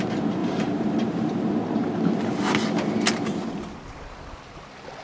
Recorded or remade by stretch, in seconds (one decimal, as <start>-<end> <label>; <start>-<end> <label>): 0.0-0.4 recorded; 0.4-1.4 remade; 1.4-5.0 recorded